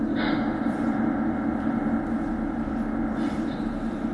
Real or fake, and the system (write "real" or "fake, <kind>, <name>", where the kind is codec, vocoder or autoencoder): real